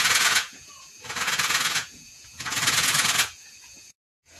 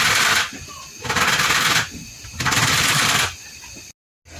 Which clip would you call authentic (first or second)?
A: second